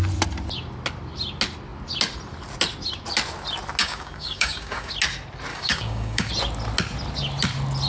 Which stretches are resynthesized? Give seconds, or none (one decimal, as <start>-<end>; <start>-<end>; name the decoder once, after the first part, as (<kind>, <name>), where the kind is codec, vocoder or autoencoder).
3.8-4.9 (codec, DAC); 5.5-6.3